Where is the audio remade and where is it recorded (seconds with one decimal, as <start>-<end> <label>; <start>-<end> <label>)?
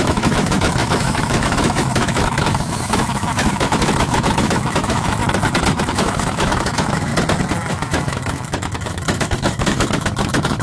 0.0-5.2 remade; 5.2-5.8 recorded; 5.8-7.1 remade; 7.1-7.7 recorded; 7.7-10.6 remade